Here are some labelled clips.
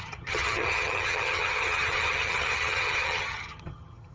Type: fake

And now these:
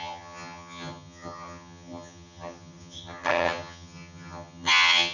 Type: fake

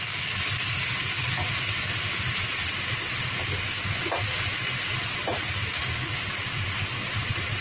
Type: real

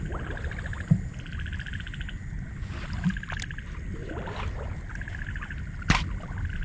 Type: real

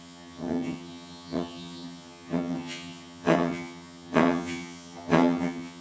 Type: fake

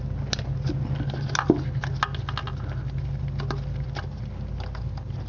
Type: real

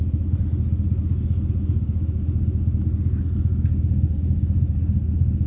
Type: real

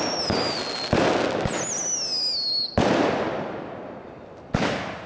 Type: real